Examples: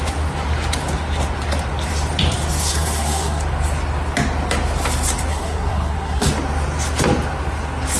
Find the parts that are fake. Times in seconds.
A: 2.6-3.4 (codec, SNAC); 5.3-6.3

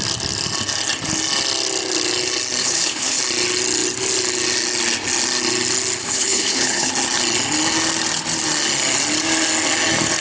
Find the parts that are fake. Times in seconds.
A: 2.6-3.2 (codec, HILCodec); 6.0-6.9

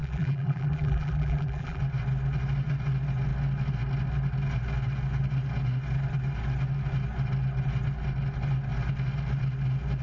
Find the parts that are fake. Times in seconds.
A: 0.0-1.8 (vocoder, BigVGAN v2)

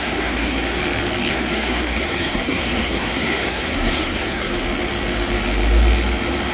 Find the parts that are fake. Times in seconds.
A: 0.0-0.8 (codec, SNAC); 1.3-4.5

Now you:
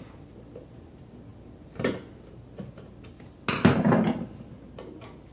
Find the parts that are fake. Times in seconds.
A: none

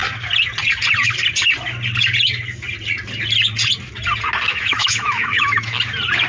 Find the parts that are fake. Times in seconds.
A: 4.5-5.8 (autoencoder, DAC-VAE)

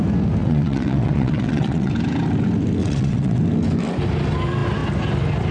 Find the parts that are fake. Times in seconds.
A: 0.4-1.9 (vocoder, WaveNeXt); 2.8-3.4

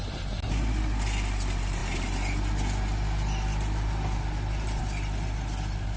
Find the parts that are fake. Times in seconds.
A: none